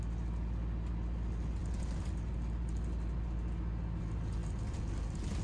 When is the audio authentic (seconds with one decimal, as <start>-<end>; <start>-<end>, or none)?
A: 0.0-5.4

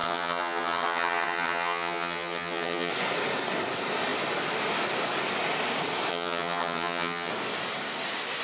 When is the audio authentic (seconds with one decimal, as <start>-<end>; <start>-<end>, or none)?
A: 2.9-6.1; 7.3-8.4

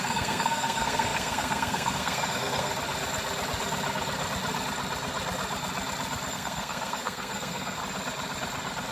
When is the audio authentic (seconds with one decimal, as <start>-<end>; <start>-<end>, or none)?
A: 2.7-6.3; 7.8-8.9